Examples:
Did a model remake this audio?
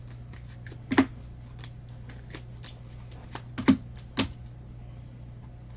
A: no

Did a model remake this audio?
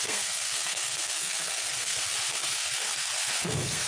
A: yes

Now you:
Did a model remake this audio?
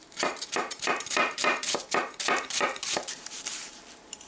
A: yes